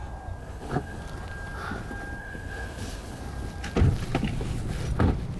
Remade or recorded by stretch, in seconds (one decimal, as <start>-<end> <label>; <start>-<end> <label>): 0.0-0.4 recorded; 0.4-1.0 remade; 1.0-2.2 recorded; 2.2-3.2 remade; 3.2-5.4 recorded